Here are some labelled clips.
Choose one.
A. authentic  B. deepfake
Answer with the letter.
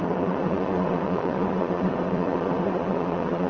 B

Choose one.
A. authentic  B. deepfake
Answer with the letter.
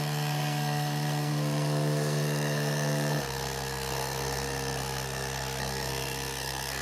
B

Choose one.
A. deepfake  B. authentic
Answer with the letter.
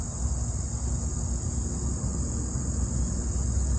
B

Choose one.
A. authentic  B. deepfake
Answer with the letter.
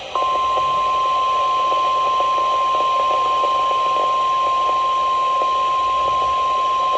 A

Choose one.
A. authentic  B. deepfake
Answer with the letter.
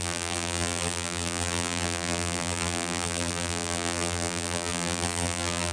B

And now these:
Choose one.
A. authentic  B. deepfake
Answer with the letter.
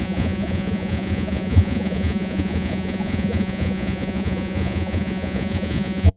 B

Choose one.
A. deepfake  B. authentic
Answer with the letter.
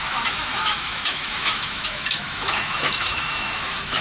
A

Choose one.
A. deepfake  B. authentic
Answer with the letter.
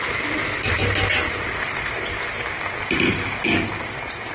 B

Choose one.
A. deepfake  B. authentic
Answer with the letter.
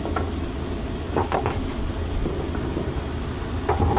B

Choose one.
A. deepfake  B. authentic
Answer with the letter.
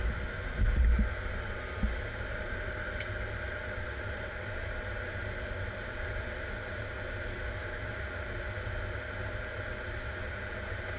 B